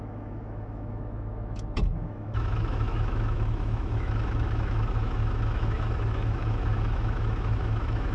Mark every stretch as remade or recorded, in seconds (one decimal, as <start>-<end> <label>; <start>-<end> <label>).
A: 0.0-8.1 remade